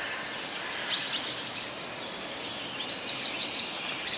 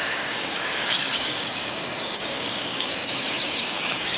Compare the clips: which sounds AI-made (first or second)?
second